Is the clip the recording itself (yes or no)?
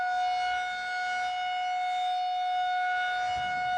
yes